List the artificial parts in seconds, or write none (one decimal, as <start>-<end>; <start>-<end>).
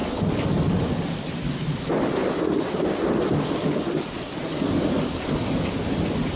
none